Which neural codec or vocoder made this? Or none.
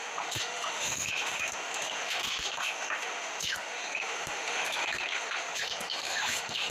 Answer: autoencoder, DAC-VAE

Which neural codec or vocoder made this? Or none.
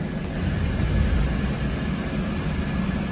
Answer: none